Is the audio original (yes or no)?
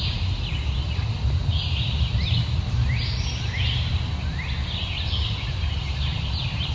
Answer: yes